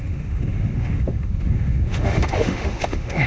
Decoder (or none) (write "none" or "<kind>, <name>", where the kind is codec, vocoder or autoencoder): autoencoder, DAC-VAE